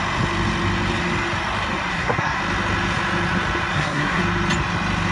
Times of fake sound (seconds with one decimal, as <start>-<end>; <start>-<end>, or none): 1.9-2.4; 3.7-4.2